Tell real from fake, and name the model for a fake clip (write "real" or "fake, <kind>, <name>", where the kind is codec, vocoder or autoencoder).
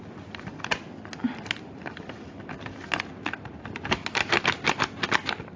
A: real